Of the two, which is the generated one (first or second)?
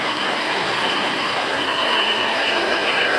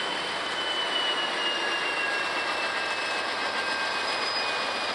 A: first